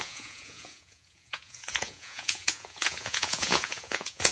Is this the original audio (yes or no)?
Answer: no